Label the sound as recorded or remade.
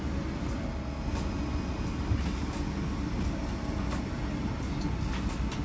recorded